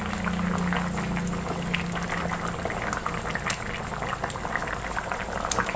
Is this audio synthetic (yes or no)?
no